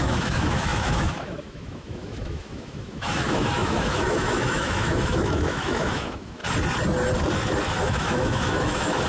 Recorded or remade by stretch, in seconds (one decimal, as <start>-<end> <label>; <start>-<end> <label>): 0.0-6.4 remade; 6.4-7.8 recorded; 7.8-9.1 remade